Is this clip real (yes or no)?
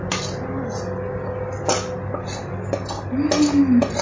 yes